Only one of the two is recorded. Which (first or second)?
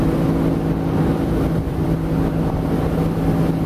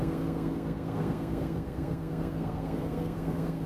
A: first